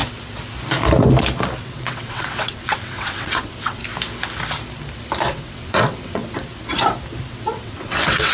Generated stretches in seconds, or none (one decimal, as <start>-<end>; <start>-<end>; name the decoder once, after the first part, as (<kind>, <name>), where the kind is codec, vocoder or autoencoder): 1.6-3.8 (vocoder, WaveNeXt); 5.3-6.2; 7.3-8.3